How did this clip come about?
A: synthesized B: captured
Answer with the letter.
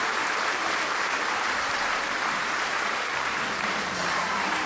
A